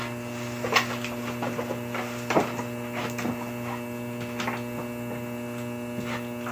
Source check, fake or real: real